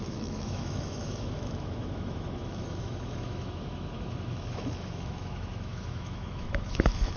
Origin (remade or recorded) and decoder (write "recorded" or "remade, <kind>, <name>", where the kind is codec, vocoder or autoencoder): remade, autoencoder, DAC-VAE